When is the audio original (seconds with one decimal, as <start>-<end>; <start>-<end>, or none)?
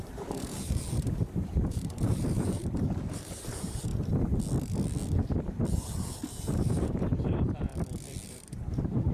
3.9-5.7; 7.7-8.3